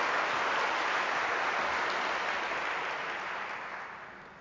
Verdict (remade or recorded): recorded